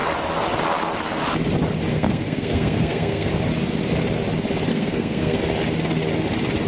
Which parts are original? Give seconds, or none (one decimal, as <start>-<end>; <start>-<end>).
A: 0.0-1.9; 3.3-4.7; 5.4-6.7